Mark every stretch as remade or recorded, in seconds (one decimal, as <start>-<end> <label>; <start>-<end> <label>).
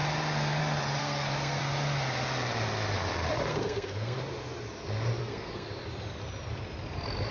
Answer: 0.0-1.0 recorded; 1.0-1.6 remade; 1.6-3.5 recorded; 3.5-4.2 remade; 4.2-5.2 recorded; 5.2-5.7 remade; 5.7-7.3 recorded